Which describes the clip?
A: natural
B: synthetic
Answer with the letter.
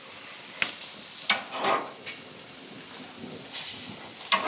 A